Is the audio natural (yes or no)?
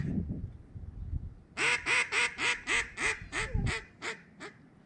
yes